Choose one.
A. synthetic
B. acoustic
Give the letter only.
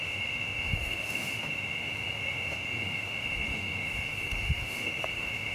A